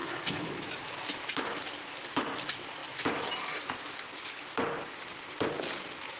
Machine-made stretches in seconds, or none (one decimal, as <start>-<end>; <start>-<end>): 0.0-0.5